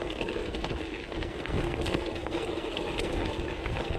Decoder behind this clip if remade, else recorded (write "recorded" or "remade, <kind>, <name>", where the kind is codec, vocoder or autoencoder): remade, codec, SNAC